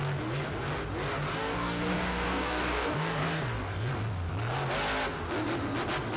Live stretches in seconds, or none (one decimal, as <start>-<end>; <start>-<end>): 0.0-1.3; 3.9-6.2